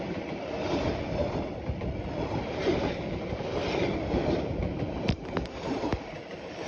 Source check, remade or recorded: remade